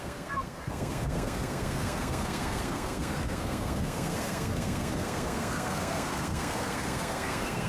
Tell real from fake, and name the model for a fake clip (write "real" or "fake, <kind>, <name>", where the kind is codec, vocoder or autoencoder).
fake, codec, SNAC